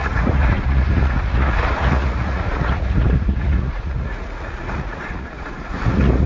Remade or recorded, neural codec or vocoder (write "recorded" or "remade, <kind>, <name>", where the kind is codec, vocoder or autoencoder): remade, vocoder, Vocos